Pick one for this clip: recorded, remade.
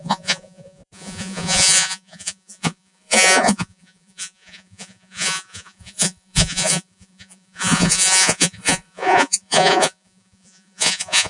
remade